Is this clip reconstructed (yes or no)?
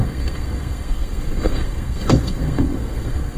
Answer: yes